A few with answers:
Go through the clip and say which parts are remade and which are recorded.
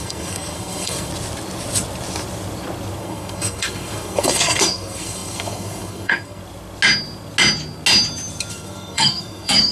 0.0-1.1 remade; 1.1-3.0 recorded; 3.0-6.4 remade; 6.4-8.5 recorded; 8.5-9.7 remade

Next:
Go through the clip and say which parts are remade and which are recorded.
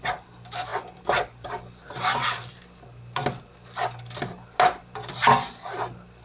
0.0-6.2 recorded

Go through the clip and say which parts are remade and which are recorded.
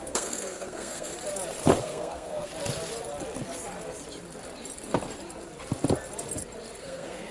0.0-1.1 remade; 1.1-1.8 recorded; 1.8-2.5 remade; 2.5-6.8 recorded; 6.8-7.3 remade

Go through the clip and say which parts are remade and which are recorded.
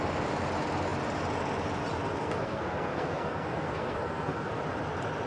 0.0-2.2 recorded; 2.2-4.5 remade; 4.5-5.3 recorded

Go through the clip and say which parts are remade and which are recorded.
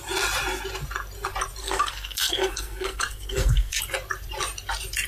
0.0-1.6 recorded; 1.6-3.8 remade; 3.8-5.1 recorded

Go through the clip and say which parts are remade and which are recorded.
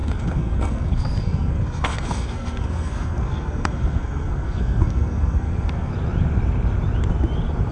0.0-5.9 remade; 5.9-7.7 recorded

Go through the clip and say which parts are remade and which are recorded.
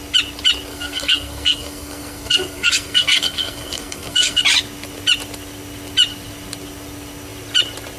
0.0-0.7 recorded; 0.7-4.4 remade; 4.4-8.0 recorded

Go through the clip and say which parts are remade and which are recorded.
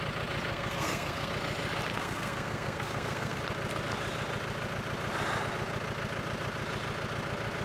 0.0-0.5 recorded; 0.5-1.3 remade; 1.3-1.9 recorded; 1.9-3.4 remade; 3.4-7.6 recorded